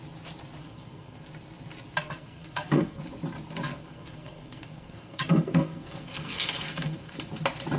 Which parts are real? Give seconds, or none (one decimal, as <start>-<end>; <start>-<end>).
0.0-0.6; 1.3-2.0; 3.0-3.7; 7.1-7.8